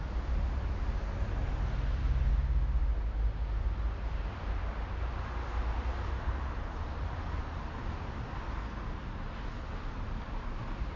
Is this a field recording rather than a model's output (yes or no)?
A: yes